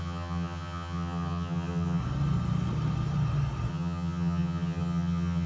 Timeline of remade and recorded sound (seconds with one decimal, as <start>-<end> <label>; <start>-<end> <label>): 0.0-2.0 remade; 2.0-3.7 recorded; 3.7-5.5 remade